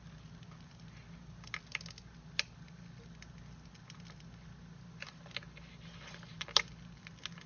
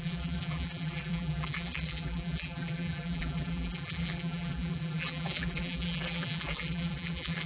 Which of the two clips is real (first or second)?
first